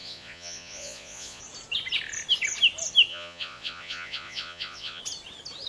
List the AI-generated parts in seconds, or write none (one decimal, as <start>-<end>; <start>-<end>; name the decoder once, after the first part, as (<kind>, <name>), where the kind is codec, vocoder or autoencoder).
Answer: 0.0-1.4 (vocoder, Vocos); 3.1-5.0